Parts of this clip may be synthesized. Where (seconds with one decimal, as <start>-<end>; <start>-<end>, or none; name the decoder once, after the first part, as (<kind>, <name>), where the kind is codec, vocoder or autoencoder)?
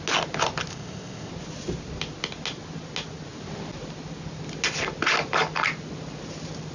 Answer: 0.7-1.3 (codec, ZipCodec)